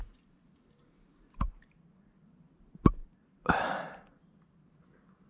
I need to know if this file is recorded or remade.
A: recorded